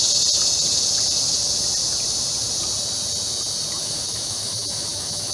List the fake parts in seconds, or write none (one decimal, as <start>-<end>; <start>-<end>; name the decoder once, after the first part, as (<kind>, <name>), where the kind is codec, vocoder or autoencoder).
3.8-5.3 (autoencoder, DAC-VAE)

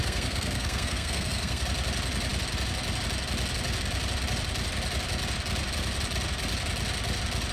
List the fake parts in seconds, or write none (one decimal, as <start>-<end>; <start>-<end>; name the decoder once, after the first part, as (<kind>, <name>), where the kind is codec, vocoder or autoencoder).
0.0-1.6 (codec, SNAC)

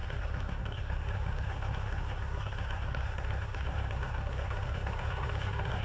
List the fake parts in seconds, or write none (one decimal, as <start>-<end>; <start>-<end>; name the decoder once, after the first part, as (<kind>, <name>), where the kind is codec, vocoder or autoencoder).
0.0-5.8 (codec, SNAC)

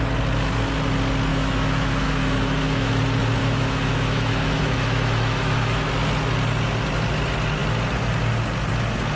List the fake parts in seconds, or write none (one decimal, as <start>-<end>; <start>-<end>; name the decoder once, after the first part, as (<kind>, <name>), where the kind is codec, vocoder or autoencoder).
1.3-3.0 (autoencoder, DAC-VAE); 3.4-5.9

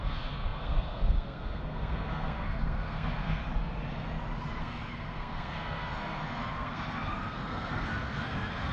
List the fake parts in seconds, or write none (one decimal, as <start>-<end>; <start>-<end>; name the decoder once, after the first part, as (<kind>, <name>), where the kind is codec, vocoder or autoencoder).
0.0-3.4 (codec, SNAC); 4.6-8.7